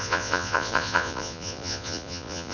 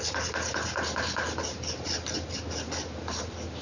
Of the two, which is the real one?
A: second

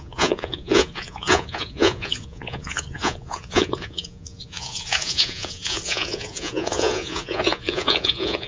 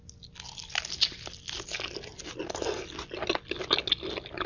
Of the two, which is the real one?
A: second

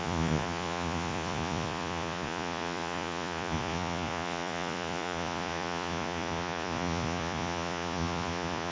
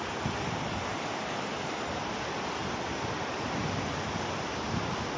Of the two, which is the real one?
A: second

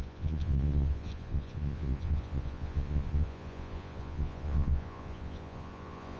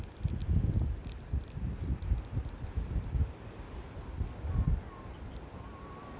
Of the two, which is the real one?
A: second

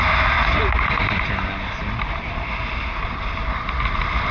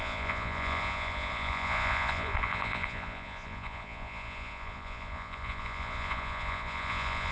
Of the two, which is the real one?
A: first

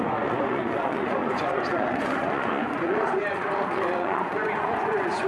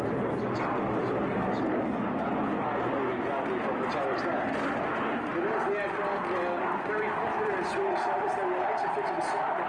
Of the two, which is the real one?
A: second